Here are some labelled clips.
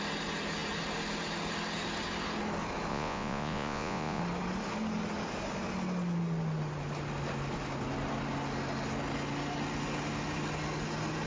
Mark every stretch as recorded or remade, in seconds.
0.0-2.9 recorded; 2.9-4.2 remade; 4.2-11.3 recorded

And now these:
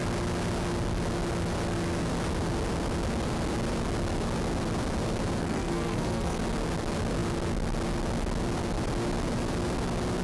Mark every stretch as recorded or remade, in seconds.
0.0-5.4 recorded; 5.4-6.4 remade; 6.4-10.2 recorded

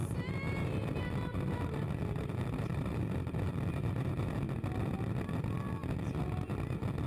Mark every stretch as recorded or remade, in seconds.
0.0-4.3 remade; 4.3-7.1 recorded